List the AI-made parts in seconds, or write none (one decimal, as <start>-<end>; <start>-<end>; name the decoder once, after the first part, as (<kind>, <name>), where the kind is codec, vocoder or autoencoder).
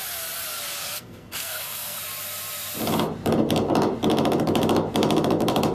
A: 0.8-2.0 (codec, SNAC)